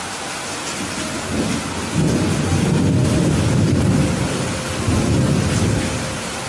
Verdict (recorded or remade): recorded